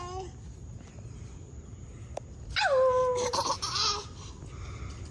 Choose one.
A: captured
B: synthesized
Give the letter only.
A